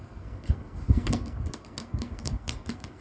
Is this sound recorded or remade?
remade